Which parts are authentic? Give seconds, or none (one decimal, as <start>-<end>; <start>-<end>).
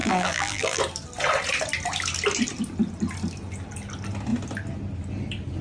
0.8-5.6